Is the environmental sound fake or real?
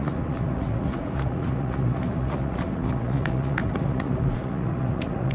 fake